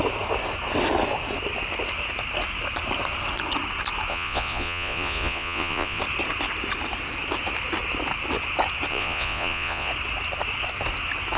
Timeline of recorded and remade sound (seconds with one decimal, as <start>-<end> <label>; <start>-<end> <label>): 0.0-4.1 recorded; 4.1-6.0 remade; 6.0-8.9 recorded; 8.9-9.9 remade; 9.9-11.4 recorded